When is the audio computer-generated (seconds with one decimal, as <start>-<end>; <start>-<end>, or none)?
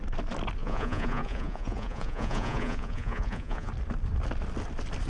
0.6-3.7